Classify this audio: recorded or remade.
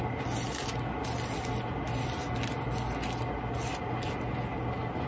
recorded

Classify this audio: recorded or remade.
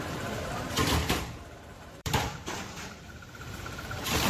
remade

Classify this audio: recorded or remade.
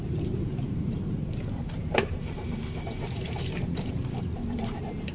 remade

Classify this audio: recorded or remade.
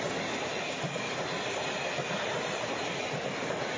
recorded